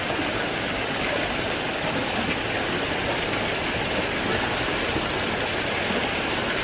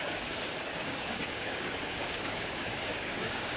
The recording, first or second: first